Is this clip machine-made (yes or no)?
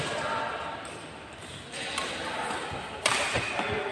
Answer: no